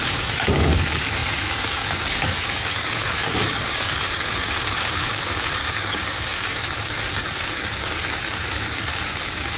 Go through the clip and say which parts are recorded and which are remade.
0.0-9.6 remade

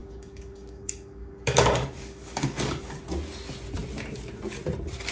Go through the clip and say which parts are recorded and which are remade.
0.0-3.0 remade; 3.0-5.1 recorded

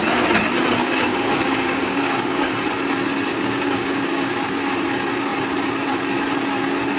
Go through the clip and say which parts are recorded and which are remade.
0.0-0.8 recorded; 0.8-2.5 remade; 2.5-3.3 recorded; 3.3-4.3 remade; 4.3-7.0 recorded

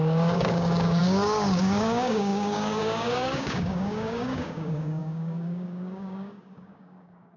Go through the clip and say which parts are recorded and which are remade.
0.0-7.4 remade

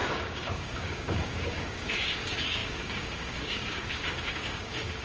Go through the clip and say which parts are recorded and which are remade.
0.0-5.0 remade

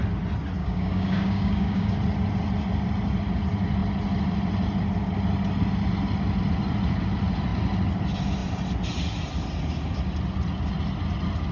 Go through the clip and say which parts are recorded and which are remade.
0.0-0.6 recorded; 0.6-1.9 remade; 1.9-11.5 recorded